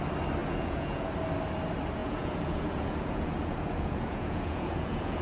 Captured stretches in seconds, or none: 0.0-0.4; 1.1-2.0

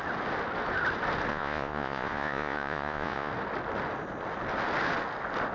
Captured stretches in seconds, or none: 0.0-1.3; 3.3-5.5